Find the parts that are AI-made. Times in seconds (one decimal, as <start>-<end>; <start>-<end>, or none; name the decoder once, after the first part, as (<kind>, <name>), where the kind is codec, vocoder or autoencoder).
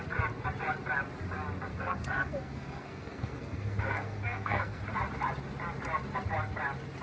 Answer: 1.7-4.8 (codec, SNAC)